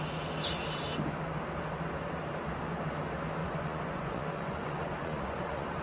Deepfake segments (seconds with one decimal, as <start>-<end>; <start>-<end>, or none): 3.4-5.8